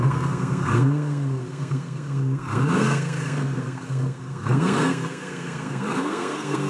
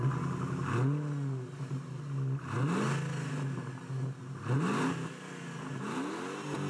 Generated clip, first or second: first